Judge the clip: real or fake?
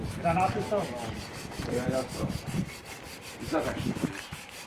fake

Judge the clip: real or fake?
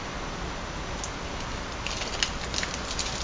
real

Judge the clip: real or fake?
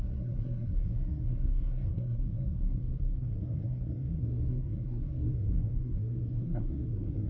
fake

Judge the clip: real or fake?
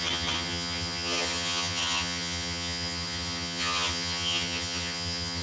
fake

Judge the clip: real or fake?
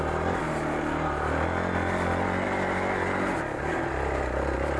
real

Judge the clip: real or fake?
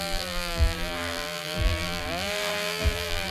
fake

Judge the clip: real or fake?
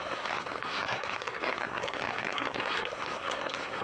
fake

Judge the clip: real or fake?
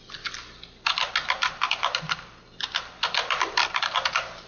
real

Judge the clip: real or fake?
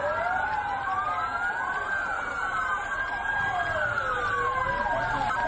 real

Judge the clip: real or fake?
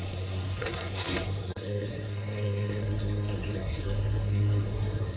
fake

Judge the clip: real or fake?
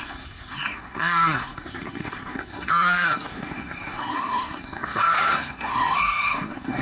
fake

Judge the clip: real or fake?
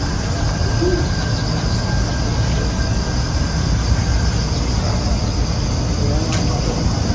real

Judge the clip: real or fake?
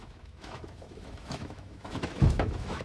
fake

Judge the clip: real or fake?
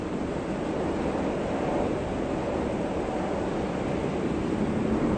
real